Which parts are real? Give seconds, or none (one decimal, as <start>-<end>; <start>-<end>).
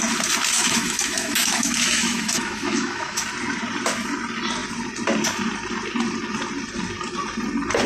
0.0-0.6; 3.2-7.9